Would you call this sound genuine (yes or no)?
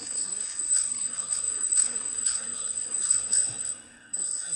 no